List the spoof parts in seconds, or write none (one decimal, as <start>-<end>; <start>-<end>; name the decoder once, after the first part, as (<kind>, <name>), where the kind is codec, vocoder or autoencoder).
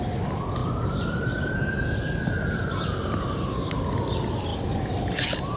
4.5-5.6 (vocoder, BigVGAN v2)